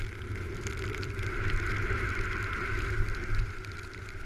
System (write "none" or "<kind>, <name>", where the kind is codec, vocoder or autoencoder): vocoder, BigVGAN v2